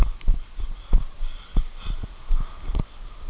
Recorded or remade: recorded